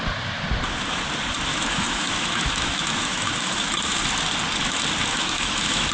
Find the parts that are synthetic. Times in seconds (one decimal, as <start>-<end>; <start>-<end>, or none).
1.5-4.0; 5.1-5.9